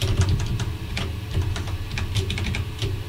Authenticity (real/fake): fake